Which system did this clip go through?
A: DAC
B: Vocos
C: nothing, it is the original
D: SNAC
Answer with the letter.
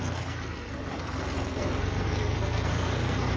D